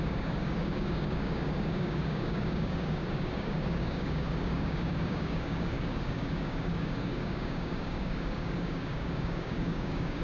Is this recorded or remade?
remade